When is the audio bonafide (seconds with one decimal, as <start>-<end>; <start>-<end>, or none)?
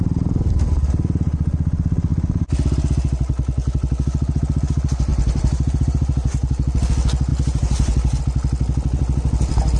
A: 0.0-5.1; 6.5-7.3; 8.2-9.8